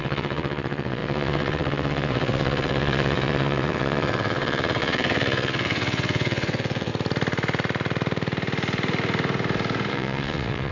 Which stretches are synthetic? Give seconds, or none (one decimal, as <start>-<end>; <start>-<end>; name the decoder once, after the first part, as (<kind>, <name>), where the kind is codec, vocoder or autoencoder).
0.0-6.9 (vocoder, WaveNeXt); 9.9-10.7